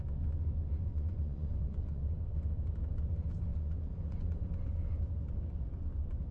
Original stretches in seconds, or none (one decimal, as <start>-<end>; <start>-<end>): 0.0-0.9; 2.0-3.5; 4.5-6.3